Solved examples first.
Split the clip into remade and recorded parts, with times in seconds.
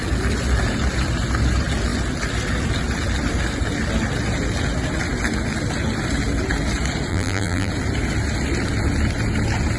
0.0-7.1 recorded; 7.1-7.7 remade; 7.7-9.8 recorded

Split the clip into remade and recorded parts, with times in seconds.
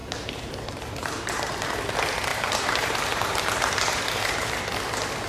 0.0-0.5 remade; 0.5-1.0 recorded; 1.0-1.5 remade; 1.5-2.3 recorded; 2.3-4.6 remade; 4.6-5.3 recorded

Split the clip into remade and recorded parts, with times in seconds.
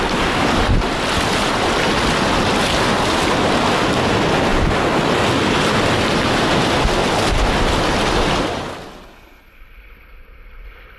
0.0-11.0 recorded